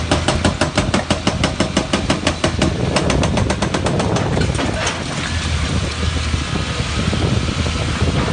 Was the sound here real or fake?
real